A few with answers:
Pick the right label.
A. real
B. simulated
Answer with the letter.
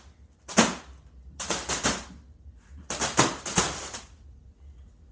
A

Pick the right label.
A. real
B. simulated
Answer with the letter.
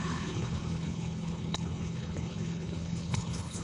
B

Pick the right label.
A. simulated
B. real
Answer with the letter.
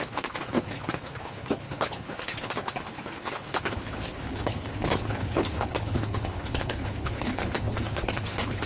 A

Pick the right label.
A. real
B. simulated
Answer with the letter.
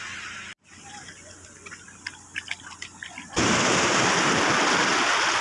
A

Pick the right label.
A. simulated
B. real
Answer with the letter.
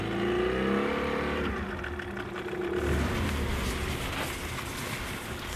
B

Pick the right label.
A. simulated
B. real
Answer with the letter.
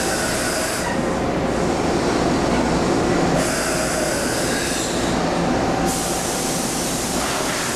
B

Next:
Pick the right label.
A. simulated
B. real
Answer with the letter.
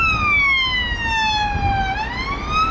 B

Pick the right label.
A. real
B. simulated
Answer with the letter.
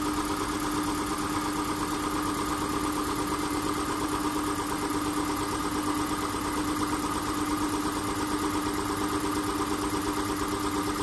A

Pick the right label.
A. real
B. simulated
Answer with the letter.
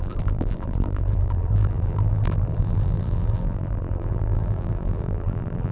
B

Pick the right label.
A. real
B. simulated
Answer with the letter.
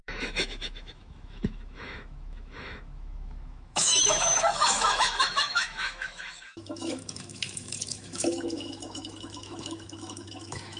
B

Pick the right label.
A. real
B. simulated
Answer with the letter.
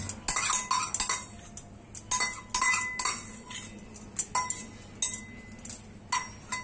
A